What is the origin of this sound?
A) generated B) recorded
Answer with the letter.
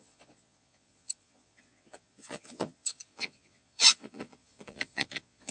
A